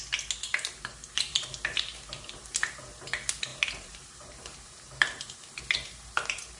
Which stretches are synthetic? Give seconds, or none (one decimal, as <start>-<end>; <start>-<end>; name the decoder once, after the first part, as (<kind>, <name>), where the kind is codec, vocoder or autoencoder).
0.5-2.8 (vocoder, BigVGAN v2); 3.5-6.6